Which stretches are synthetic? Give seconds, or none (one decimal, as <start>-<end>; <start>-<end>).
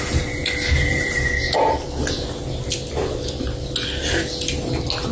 none